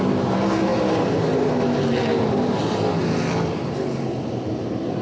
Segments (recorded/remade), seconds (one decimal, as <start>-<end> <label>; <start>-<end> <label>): 0.0-5.0 recorded